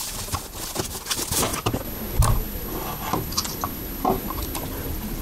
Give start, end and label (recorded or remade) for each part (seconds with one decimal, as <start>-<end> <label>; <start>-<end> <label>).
0.0-1.5 remade; 1.5-4.6 recorded; 4.6-5.2 remade